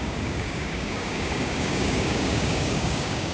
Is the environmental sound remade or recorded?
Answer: remade